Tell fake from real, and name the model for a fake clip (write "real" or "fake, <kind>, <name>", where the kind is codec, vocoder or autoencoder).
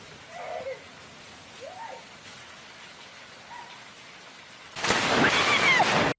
real